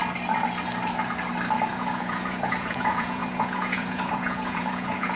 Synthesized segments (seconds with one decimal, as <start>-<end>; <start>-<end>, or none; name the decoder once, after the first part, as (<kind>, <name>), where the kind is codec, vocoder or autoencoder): 1.7-5.2 (vocoder, Vocos)